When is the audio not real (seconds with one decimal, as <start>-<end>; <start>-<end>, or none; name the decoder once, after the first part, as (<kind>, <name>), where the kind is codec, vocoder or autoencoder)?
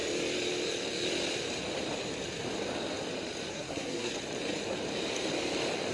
3.5-4.1 (codec, SNAC)